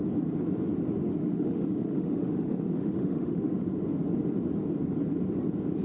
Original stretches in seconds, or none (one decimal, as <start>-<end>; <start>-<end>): 0.0-1.1; 3.7-5.8